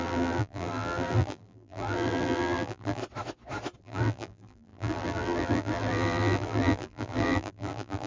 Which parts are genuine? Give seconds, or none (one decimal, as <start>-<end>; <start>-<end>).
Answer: 3.0-3.8